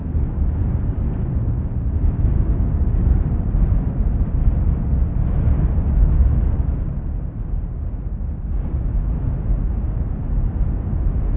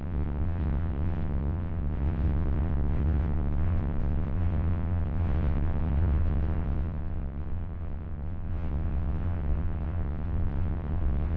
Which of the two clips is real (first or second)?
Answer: first